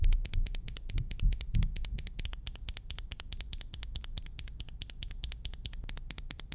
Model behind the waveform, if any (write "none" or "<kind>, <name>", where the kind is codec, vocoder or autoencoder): none